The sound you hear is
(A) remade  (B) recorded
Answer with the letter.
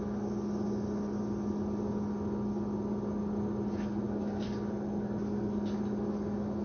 B